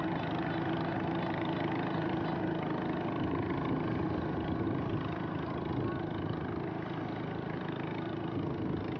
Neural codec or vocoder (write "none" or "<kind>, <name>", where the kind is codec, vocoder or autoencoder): none